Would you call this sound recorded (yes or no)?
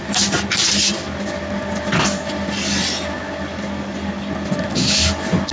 yes